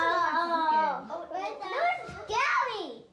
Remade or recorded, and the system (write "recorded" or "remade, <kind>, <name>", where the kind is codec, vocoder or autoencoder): recorded